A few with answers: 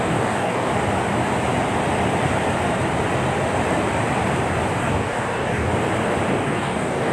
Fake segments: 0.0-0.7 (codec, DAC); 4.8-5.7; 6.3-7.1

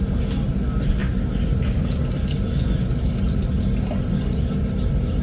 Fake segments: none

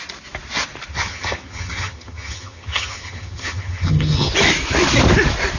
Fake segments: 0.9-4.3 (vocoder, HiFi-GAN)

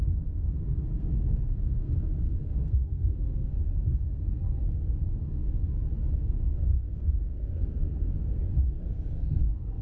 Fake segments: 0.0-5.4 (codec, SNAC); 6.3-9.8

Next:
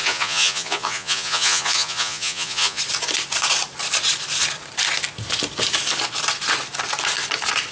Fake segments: 0.0-2.8 (vocoder, Vocos)

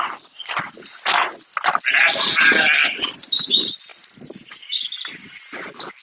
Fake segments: none

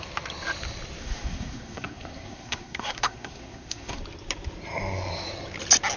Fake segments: 1.0-4.0 (codec, SNAC)